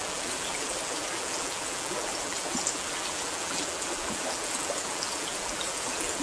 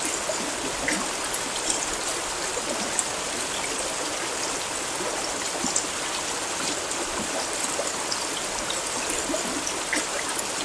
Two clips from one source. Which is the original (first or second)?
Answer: second